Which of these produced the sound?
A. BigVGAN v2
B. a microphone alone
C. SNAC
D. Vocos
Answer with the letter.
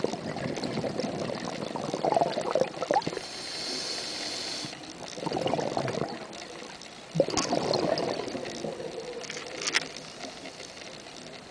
B